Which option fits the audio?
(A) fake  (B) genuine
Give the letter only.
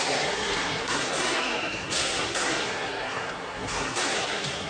A